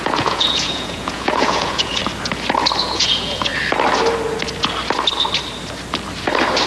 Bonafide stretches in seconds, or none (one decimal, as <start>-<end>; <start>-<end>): 2.0-2.8; 3.5-6.7